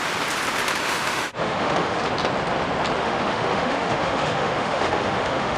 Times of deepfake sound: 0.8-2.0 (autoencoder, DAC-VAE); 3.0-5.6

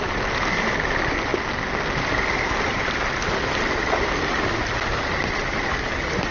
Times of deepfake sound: none

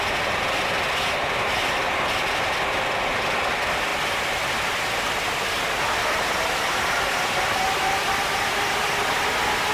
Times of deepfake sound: none

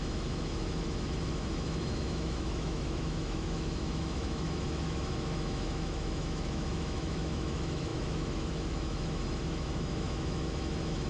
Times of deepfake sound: 0.0-11.1 (autoencoder, DAC-VAE)

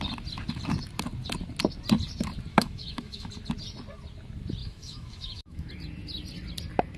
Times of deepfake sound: 2.5-3.3 (autoencoder, DAC-VAE); 4.6-5.7